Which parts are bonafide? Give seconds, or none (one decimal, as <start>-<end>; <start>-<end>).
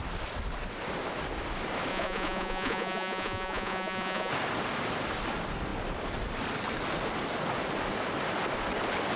0.0-1.9; 4.3-9.2